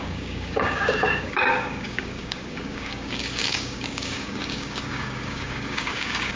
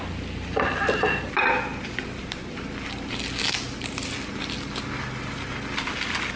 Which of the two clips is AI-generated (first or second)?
first